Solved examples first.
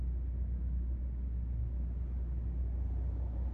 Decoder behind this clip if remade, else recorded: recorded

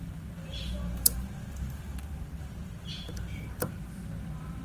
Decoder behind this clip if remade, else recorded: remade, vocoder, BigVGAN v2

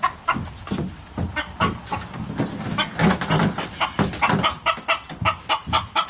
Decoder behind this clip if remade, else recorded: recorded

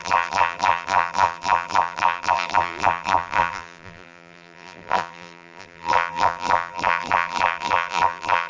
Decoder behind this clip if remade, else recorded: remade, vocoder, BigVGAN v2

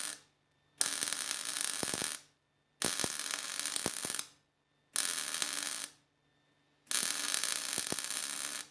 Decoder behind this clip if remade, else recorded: recorded